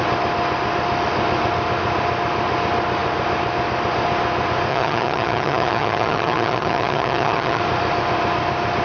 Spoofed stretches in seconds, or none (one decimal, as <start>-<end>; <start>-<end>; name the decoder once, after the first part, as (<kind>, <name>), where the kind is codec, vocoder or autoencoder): 4.7-7.6 (vocoder, HiFi-GAN)